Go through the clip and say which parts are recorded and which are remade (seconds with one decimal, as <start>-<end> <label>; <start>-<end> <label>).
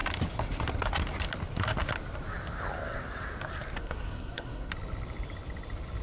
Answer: 0.0-3.8 recorded; 3.8-4.7 remade; 4.7-6.0 recorded